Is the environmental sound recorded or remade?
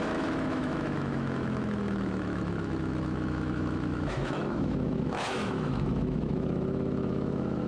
remade